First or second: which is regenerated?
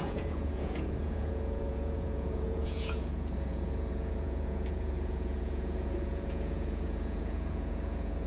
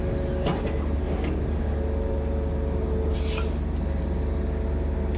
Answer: first